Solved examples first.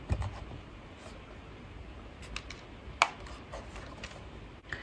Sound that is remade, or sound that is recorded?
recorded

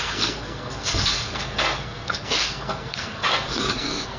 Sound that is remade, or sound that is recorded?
remade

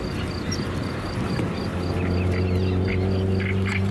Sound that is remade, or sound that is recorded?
recorded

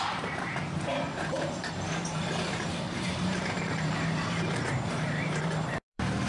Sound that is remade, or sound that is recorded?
remade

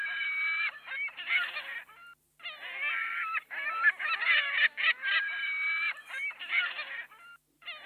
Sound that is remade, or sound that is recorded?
recorded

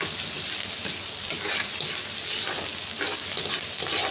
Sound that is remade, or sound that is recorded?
recorded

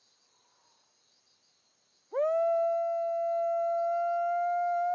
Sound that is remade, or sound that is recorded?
recorded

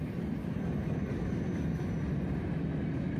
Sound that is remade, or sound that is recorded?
recorded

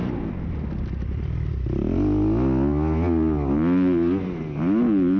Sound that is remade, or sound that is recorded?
recorded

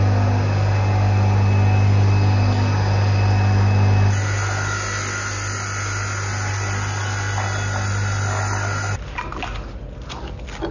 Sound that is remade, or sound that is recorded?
recorded